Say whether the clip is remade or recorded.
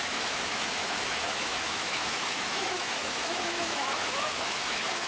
remade